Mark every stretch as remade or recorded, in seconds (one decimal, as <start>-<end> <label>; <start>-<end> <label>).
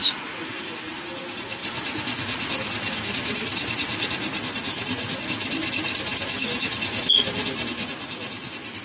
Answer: 0.0-8.8 recorded